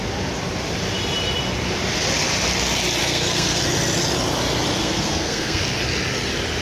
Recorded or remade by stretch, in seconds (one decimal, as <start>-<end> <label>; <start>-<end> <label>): 0.0-3.0 recorded; 3.0-3.6 remade; 3.6-4.8 recorded; 4.8-5.6 remade; 5.6-6.6 recorded